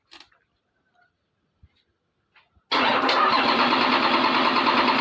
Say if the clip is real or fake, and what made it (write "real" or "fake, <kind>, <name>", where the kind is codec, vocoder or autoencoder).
real